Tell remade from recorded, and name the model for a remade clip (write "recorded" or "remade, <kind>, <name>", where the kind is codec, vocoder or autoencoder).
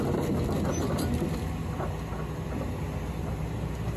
recorded